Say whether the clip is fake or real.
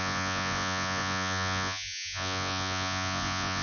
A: fake